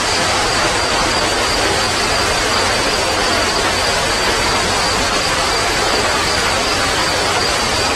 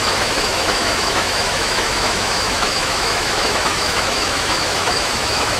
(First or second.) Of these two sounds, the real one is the first